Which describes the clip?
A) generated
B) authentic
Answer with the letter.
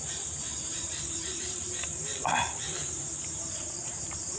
A